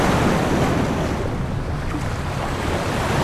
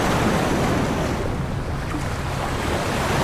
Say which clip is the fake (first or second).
first